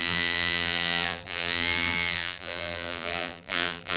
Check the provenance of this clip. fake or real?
fake